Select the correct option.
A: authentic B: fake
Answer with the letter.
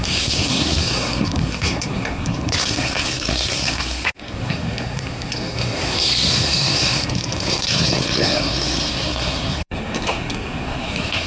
B